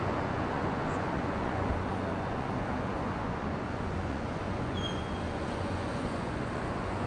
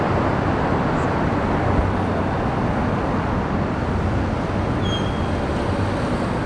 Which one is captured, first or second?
second